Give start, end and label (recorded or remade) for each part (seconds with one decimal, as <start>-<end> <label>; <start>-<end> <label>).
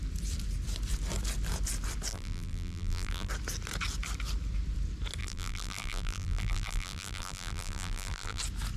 0.0-2.1 recorded; 2.1-3.3 remade; 3.3-5.2 recorded; 5.2-8.4 remade; 8.4-8.8 recorded